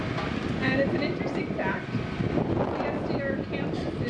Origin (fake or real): real